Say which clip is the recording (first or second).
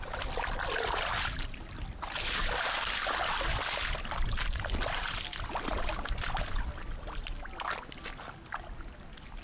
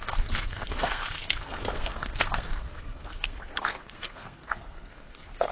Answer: first